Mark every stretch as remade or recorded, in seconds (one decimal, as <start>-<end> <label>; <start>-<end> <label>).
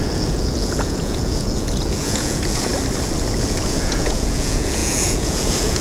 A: 0.0-2.7 remade; 2.7-3.3 recorded; 3.3-5.8 remade